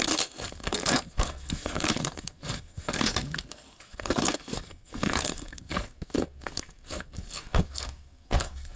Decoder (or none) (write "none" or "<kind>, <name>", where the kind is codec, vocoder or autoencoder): codec, SNAC